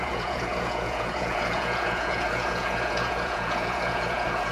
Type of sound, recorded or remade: remade